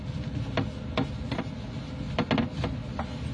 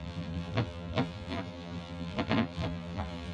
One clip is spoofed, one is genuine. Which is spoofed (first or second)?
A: second